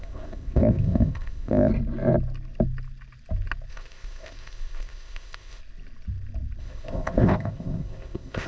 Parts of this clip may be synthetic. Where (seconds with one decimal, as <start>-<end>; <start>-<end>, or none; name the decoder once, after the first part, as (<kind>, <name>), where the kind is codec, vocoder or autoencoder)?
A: 0.0-1.7 (codec, ZipCodec); 3.7-5.6; 6.6-8.5